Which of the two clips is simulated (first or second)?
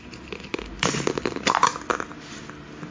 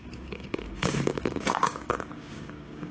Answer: second